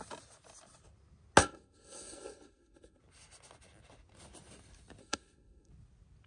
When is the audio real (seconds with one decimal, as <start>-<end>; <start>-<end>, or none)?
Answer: 0.0-1.4; 3.0-5.0; 5.7-6.3